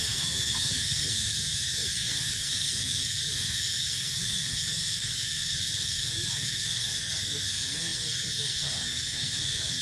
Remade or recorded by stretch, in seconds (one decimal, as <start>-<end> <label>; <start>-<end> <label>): 0.0-9.8 remade